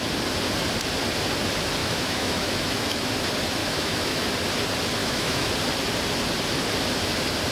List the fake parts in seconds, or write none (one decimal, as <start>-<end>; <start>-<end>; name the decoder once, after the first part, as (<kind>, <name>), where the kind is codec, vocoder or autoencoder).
1.8-3.1 (autoencoder, DAC-VAE); 3.6-4.3; 5.0-5.5